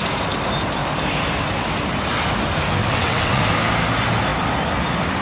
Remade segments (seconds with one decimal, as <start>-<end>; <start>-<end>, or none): 2.8-3.4